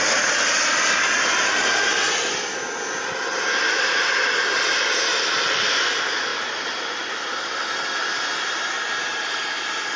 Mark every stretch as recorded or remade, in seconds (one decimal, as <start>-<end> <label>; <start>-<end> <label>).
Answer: 0.0-6.3 recorded; 6.3-7.3 remade; 7.3-10.0 recorded